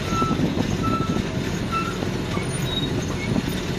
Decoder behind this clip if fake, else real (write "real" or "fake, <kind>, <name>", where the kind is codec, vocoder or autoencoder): real